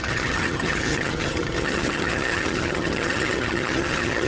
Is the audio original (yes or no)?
no